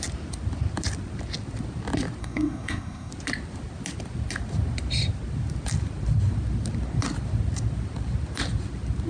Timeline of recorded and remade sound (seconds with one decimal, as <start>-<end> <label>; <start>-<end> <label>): 0.0-2.2 recorded; 2.2-3.1 remade; 3.1-9.1 recorded